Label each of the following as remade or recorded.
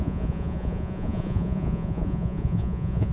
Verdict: remade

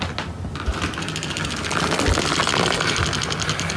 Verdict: recorded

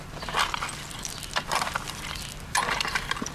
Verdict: recorded